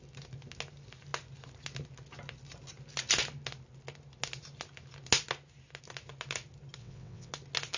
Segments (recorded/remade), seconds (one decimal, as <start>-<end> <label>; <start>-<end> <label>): 0.0-6.8 recorded; 6.8-7.3 remade; 7.3-7.8 recorded